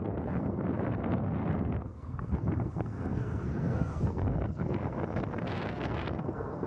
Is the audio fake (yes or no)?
yes